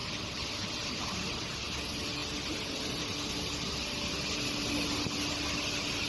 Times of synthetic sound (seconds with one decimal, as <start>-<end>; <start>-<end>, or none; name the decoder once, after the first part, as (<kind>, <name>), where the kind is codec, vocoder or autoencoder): none